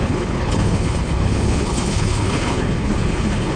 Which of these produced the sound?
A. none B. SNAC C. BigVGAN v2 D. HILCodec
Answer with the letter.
D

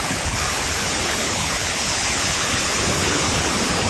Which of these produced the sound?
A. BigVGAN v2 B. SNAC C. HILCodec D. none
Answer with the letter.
C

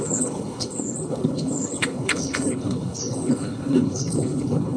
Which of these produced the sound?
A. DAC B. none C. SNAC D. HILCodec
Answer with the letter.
D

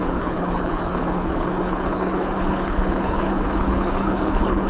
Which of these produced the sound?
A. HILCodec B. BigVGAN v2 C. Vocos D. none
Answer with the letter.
A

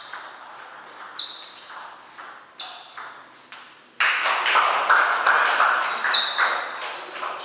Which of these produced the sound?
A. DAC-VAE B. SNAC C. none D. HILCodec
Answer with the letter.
C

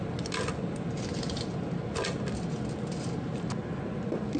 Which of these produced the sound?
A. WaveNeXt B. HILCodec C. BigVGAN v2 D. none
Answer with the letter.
D